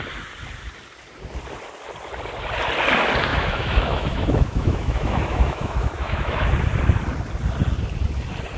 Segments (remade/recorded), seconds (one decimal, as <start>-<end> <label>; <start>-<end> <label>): 0.0-3.3 recorded; 3.3-6.5 remade; 6.5-8.6 recorded